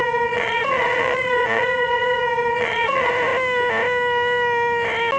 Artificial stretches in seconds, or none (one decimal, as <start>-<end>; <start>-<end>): 0.0-3.1